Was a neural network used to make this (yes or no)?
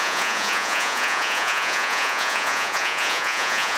yes